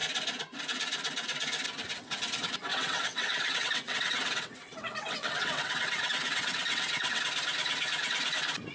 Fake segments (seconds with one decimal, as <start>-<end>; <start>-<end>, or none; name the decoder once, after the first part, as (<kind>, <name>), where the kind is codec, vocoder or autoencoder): 2.7-7.2 (vocoder, WaveNeXt)